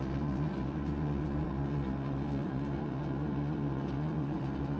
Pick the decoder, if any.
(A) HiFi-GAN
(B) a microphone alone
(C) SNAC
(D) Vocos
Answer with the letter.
D